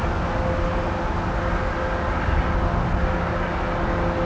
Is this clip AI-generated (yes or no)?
no